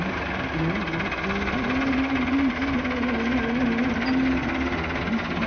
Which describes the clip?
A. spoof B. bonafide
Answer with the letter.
B